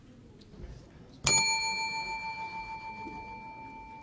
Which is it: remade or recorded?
recorded